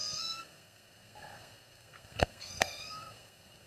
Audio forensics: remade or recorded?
remade